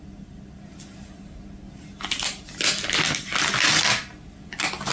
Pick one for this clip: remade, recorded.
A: recorded